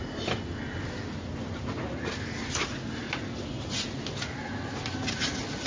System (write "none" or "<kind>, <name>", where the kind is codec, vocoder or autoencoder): none